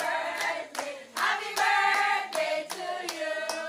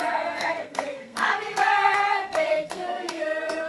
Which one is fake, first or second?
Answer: second